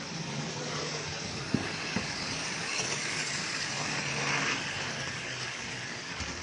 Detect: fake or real fake